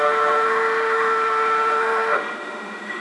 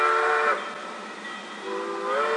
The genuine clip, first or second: second